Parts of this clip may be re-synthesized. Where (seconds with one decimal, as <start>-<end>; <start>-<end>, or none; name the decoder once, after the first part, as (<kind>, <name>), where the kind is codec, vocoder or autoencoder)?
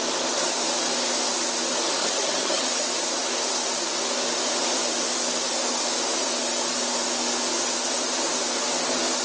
2.0-2.7 (vocoder, HiFi-GAN)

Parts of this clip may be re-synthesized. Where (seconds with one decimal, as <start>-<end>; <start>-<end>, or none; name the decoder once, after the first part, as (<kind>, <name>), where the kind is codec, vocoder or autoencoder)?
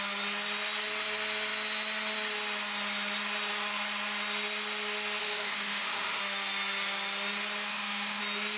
5.2-6.2 (autoencoder, DAC-VAE); 7.7-8.2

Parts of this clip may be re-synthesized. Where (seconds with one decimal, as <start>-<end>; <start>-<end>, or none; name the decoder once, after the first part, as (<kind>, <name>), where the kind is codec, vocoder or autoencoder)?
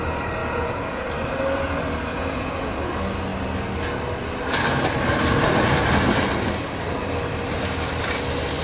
0.4-1.1 (vocoder, Vocos); 2.1-2.7